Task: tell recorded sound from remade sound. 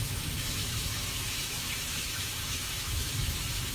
remade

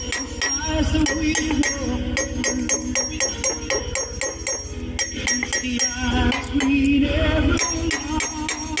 recorded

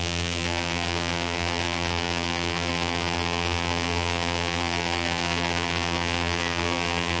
remade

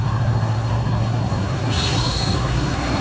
remade